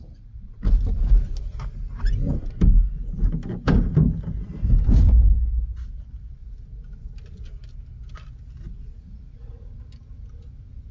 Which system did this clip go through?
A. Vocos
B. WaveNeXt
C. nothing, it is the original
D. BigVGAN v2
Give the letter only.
C